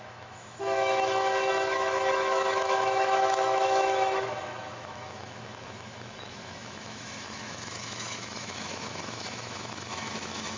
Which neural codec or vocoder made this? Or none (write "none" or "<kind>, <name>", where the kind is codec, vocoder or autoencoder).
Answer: autoencoder, DAC-VAE